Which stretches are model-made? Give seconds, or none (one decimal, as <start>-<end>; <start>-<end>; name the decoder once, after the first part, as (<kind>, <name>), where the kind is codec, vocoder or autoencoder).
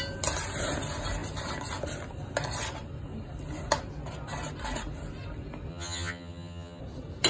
5.7-6.8 (vocoder, HiFi-GAN)